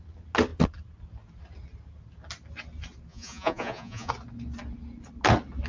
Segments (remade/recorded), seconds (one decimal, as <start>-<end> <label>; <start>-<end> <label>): 0.0-3.1 recorded; 3.1-4.1 remade; 4.1-5.7 recorded